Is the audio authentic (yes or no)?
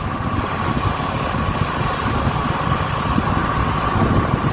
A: yes